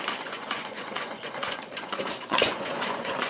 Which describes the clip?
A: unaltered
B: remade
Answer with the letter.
B